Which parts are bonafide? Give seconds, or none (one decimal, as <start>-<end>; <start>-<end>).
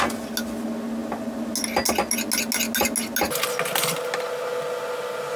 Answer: 0.0-5.4